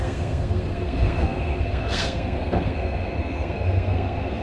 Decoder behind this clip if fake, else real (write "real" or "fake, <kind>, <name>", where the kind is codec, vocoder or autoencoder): fake, codec, SNAC